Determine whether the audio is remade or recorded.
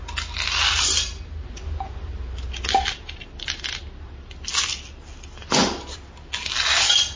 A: recorded